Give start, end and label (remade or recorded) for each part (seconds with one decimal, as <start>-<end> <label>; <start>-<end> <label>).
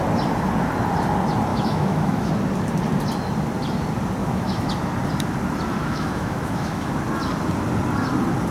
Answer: 0.0-1.5 recorded; 1.5-2.3 remade; 2.3-4.2 recorded; 4.2-4.7 remade; 4.7-5.8 recorded; 5.8-6.9 remade; 6.9-8.5 recorded